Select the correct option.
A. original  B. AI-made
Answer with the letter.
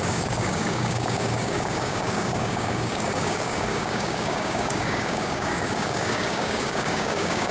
B